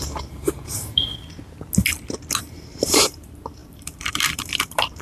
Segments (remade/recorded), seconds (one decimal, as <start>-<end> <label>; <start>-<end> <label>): 0.0-1.1 remade; 1.1-2.4 recorded; 2.4-5.0 remade